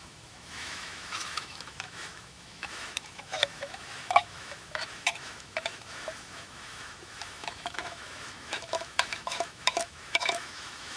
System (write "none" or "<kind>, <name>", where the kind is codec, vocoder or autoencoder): autoencoder, DAC-VAE